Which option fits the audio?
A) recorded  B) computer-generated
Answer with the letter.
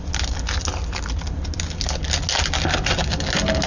A